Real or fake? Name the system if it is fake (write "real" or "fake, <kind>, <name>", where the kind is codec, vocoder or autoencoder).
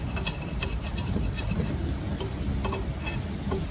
real